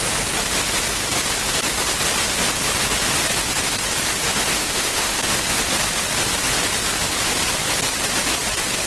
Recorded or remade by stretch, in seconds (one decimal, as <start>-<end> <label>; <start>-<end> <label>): 0.0-4.5 recorded; 4.5-5.4 remade; 5.4-8.9 recorded